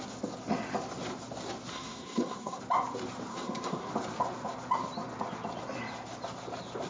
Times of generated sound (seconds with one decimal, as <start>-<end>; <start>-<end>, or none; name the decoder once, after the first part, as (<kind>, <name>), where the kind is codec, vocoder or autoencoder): 1.7-2.6 (codec, SNAC); 3.3-3.9